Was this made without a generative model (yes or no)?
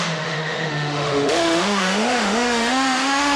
no